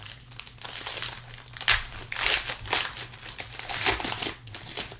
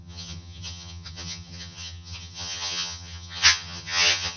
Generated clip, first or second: second